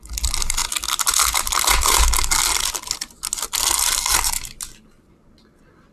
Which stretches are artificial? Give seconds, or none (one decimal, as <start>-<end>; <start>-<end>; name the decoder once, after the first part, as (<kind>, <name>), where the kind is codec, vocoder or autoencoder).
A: none